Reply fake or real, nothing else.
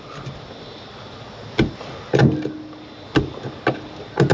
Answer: real